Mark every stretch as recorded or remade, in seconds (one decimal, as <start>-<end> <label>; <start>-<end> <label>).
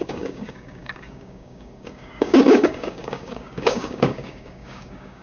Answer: 0.0-5.2 remade